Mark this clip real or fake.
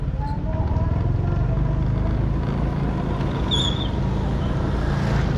real